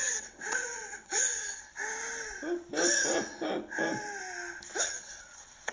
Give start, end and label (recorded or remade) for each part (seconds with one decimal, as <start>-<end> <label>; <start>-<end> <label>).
0.0-1.4 remade; 1.4-4.8 recorded; 4.8-5.7 remade